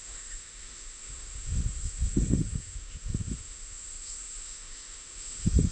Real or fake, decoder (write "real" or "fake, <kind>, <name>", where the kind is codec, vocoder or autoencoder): fake, autoencoder, DAC-VAE